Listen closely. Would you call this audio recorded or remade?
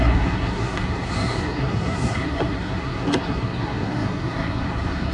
remade